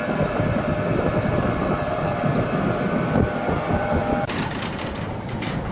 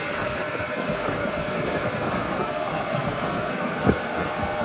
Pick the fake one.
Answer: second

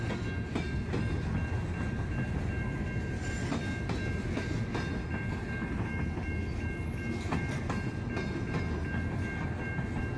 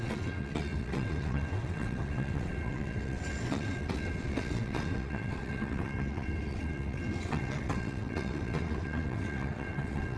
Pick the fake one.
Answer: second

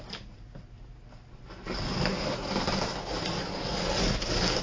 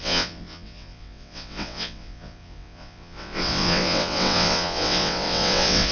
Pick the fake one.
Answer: second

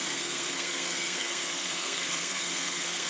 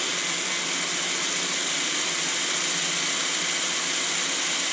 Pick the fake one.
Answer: first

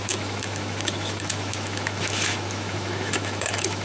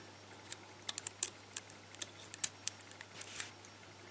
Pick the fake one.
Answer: first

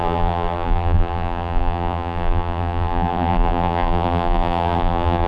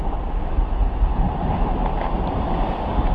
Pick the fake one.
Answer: first